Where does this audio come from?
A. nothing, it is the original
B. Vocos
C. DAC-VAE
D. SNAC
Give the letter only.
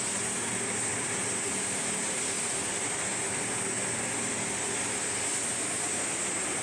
A